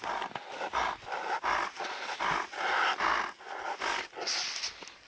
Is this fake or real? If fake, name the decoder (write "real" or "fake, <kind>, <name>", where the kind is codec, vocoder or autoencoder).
real